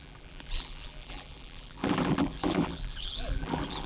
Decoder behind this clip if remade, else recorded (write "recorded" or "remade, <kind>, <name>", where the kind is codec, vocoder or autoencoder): remade, vocoder, BigVGAN v2